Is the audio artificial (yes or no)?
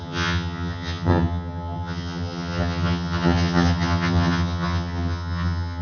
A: yes